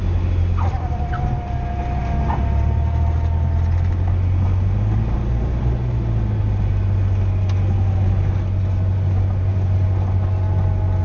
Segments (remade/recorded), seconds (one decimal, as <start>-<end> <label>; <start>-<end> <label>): 0.0-11.0 recorded